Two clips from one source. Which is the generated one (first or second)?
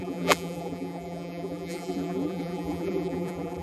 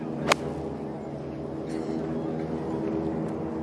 first